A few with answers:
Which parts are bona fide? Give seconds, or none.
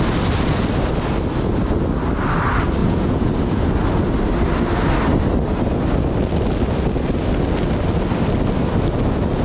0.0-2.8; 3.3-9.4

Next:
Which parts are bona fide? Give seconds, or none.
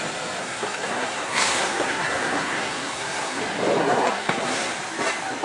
0.0-0.4; 3.4-3.8; 4.7-5.4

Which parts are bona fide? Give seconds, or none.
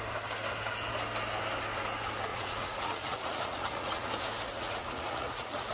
0.0-2.3; 4.1-4.5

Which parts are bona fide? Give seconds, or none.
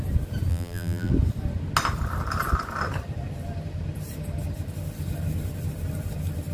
0.0-0.5; 1.1-6.5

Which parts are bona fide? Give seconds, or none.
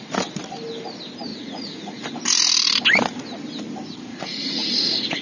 0.0-1.3; 2.1-4.1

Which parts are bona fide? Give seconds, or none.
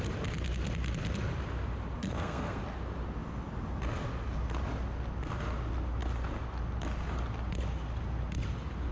0.0-2.0; 2.6-8.9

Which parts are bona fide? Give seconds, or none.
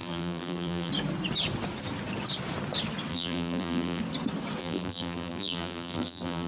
0.9-3.1; 4.0-4.6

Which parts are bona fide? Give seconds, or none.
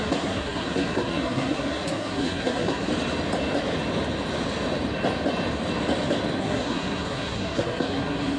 2.9-6.4